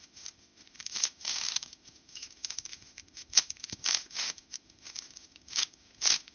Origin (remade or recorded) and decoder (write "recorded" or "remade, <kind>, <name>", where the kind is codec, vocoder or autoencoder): remade, autoencoder, DAC-VAE